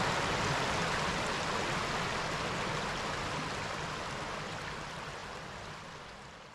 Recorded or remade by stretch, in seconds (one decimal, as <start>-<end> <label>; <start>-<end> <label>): 0.0-6.5 recorded